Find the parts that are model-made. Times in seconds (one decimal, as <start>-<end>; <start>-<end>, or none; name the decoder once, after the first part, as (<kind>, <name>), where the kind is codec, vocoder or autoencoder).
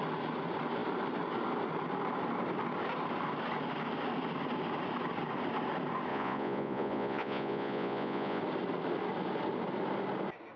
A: 6.1-8.4 (vocoder, Vocos)